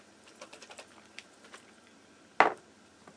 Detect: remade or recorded recorded